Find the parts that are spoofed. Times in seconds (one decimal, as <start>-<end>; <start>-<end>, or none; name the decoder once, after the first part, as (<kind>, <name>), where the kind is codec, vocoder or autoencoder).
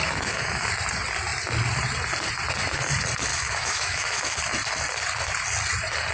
0.0-0.7 (autoencoder, DAC-VAE); 3.3-4.4